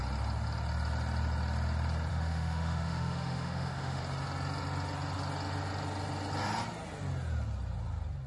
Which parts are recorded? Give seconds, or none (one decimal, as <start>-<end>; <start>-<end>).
0.0-2.1; 4.0-8.3